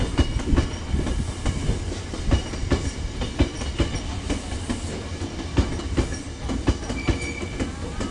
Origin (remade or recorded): recorded